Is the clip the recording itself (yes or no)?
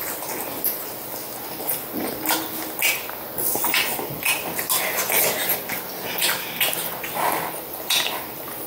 yes